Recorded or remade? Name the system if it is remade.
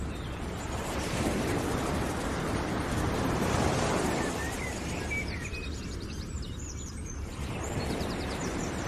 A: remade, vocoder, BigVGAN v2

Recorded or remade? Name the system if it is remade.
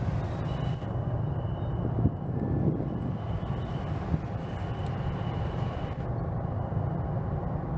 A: recorded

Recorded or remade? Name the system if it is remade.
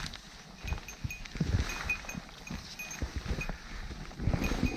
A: recorded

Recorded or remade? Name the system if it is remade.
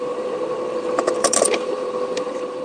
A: remade, vocoder, BigVGAN v2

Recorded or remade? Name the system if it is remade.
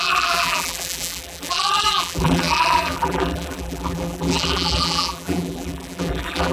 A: remade, vocoder, BigVGAN v2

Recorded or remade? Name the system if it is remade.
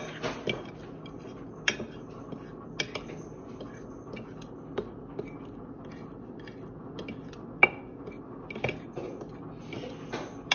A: recorded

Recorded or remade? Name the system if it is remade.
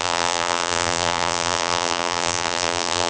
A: remade, vocoder, BigVGAN v2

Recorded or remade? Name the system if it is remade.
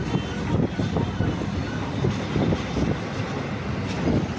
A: recorded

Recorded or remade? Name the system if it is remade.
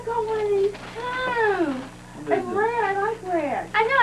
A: recorded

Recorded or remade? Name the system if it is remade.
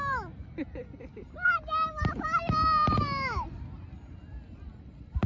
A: remade, vocoder, BigVGAN v2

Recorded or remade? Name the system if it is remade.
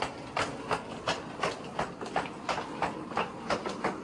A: recorded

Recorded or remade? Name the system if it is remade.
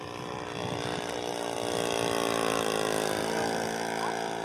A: recorded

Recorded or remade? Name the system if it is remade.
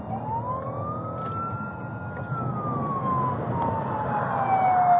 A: recorded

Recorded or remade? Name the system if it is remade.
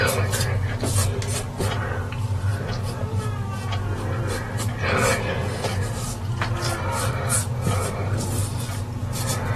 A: recorded